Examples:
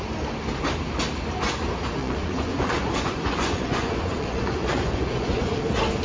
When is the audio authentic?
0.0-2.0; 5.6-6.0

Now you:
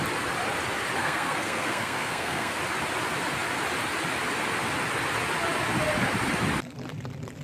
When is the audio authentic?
0.0-1.0; 2.6-7.4

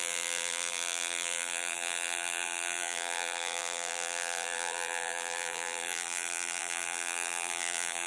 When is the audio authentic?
none

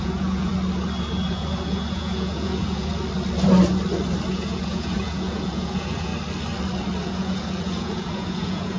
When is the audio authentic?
0.5-1.3; 2.9-4.3; 6.1-7.0

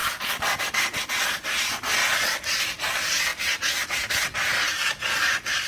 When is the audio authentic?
0.6-2.0; 2.6-5.7

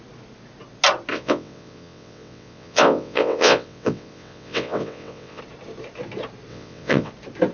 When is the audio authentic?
0.0-1.1; 5.4-6.5; 7.1-7.5

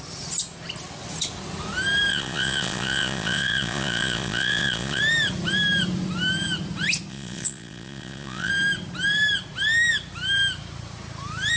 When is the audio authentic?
0.0-2.1; 5.0-7.1; 8.5-11.6